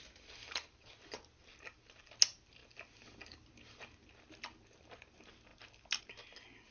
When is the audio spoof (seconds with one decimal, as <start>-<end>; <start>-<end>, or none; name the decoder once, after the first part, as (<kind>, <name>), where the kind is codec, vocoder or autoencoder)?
none